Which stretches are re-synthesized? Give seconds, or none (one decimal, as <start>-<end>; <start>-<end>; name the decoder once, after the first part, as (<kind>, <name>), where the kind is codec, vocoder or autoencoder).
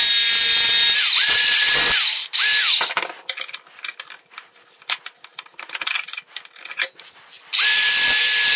1.2-1.8 (vocoder, Vocos)